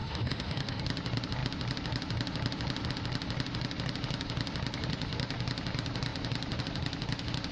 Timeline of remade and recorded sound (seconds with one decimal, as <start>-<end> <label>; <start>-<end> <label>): 0.0-0.8 remade; 0.8-7.5 recorded